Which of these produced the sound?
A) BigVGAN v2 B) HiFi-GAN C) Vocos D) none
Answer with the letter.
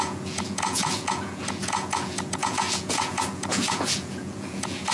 C